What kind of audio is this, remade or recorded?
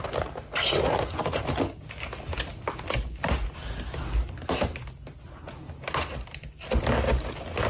recorded